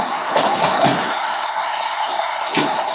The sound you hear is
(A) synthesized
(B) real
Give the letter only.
A